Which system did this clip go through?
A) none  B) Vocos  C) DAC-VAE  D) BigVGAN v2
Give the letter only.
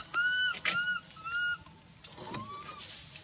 A